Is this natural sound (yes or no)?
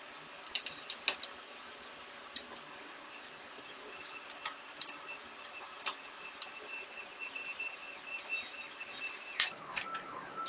yes